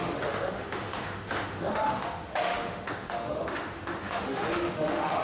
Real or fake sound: fake